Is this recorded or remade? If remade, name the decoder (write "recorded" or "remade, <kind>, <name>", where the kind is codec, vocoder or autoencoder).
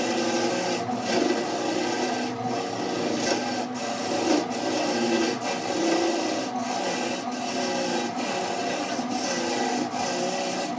recorded